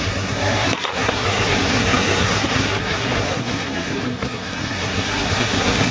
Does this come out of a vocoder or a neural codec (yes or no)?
yes